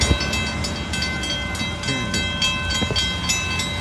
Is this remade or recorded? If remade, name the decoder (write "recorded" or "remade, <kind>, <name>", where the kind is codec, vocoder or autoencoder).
recorded